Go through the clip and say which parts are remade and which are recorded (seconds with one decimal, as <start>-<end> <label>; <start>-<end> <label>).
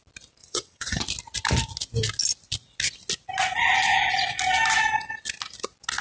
0.0-0.4 recorded; 0.4-1.0 remade; 1.0-6.0 recorded